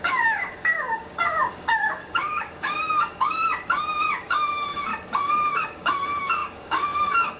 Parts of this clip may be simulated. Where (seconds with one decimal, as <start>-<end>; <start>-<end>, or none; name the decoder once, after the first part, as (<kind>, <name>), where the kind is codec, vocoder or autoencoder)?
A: 0.0-4.9 (codec, DAC); 5.5-7.4